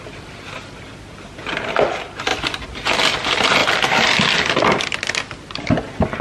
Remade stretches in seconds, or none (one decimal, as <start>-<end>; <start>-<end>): none